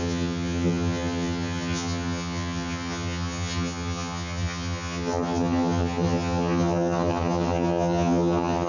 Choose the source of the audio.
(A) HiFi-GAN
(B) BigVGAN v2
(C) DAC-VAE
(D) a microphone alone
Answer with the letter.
A